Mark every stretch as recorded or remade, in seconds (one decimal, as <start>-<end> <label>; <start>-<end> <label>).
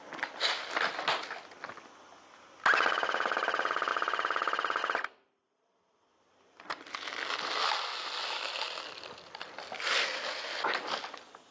0.0-11.5 recorded